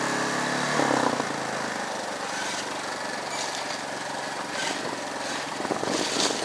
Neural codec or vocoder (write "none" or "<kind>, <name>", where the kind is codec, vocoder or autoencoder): none